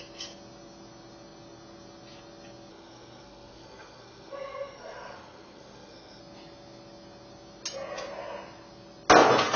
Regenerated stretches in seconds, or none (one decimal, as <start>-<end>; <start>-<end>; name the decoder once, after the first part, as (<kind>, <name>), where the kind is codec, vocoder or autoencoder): 2.7-6.2 (codec, SNAC)